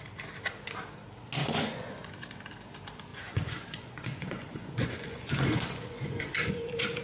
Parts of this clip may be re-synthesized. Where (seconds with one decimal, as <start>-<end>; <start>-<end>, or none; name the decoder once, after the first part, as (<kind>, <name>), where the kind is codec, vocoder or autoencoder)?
1.4-2.1 (vocoder, Vocos); 3.1-6.5